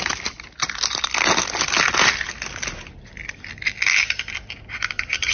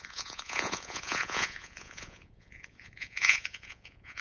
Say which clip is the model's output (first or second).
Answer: second